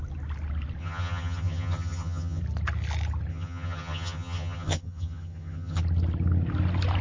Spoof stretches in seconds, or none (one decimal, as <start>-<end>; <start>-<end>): 0.8-2.4; 3.3-5.8